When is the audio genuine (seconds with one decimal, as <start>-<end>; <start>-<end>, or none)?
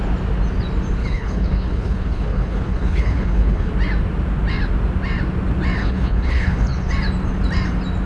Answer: 0.0-1.0; 3.7-5.8; 6.9-8.1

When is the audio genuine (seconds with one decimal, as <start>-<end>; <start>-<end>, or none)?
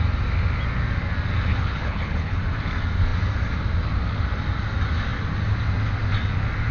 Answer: 0.0-1.5; 2.4-6.7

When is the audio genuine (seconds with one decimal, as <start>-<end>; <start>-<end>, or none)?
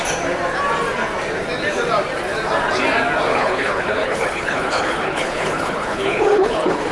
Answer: 0.0-3.3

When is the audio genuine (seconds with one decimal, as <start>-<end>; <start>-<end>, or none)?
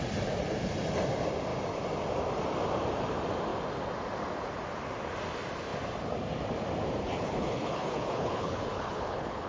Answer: 0.0-7.0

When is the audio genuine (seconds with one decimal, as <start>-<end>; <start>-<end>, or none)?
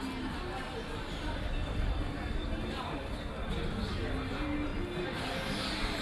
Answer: 0.0-6.0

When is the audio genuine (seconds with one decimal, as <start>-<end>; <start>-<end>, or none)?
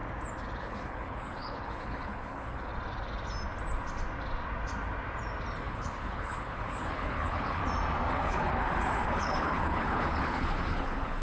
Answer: 0.0-0.6; 2.7-5.6; 7.6-8.1